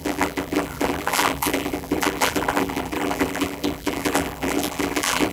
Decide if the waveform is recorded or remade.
remade